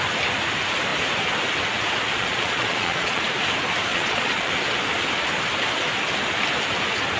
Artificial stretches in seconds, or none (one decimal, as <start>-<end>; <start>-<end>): 2.1-3.2; 3.9-4.5